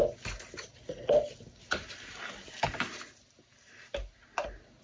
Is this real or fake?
real